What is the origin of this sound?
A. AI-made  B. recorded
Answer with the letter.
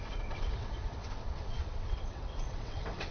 A